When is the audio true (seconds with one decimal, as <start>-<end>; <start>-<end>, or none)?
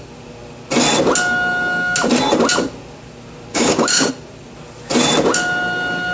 0.0-3.5; 4.1-6.1